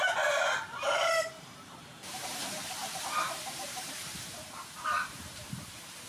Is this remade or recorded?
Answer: remade